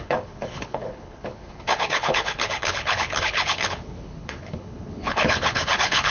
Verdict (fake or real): fake